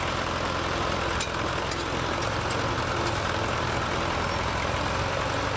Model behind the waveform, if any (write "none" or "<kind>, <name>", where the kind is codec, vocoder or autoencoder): none